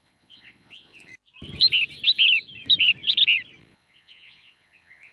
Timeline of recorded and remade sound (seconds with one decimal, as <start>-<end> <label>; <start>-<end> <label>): 0.0-1.1 remade; 1.1-3.6 recorded; 3.6-5.1 remade